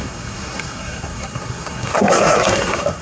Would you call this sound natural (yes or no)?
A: no